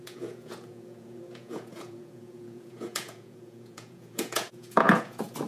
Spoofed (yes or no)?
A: yes